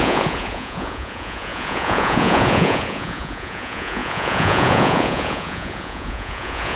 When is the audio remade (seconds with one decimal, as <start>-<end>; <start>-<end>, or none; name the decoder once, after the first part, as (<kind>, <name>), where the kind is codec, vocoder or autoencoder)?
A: 0.0-6.8 (vocoder, Vocos)